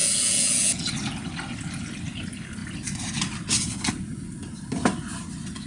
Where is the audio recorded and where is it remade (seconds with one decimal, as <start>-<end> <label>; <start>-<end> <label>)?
0.0-0.9 remade; 0.9-5.7 recorded